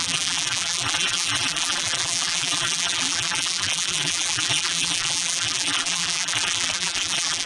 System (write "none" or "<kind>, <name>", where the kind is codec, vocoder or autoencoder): vocoder, BigVGAN v2